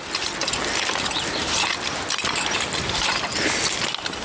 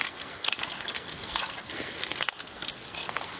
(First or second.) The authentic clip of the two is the first